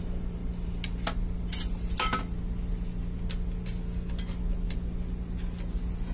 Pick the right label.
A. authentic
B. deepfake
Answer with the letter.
A